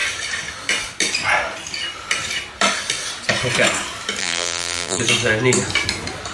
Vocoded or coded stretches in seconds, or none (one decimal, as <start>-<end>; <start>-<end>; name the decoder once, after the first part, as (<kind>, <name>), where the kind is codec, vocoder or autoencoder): 4.2-5.0 (vocoder, BigVGAN v2)